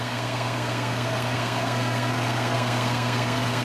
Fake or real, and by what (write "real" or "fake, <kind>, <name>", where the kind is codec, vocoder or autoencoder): fake, codec, SNAC